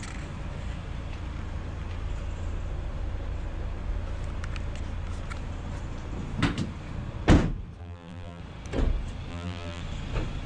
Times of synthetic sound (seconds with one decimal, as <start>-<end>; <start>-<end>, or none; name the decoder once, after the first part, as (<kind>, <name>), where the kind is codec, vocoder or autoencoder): 7.8-8.4 (vocoder, BigVGAN v2); 9.3-9.8

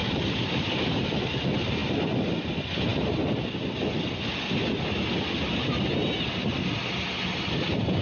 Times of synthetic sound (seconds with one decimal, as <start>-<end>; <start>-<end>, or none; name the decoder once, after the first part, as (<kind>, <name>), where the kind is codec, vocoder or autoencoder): 0.0-0.7 (vocoder, BigVGAN v2); 1.8-2.5

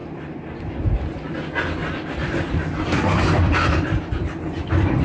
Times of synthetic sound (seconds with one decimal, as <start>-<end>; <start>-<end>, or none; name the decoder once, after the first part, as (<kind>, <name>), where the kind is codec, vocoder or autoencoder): 0.0-1.4 (vocoder, BigVGAN v2); 1.8-5.0

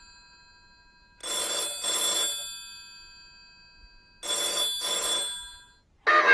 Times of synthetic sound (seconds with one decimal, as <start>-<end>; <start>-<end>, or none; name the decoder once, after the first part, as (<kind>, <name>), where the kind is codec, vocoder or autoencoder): none